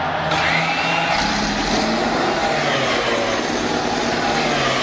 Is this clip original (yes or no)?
yes